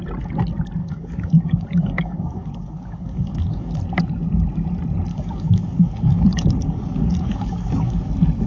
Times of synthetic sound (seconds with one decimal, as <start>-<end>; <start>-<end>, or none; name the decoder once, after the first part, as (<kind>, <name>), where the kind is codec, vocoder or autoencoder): 0.8-3.8 (codec, DAC); 5.1-8.1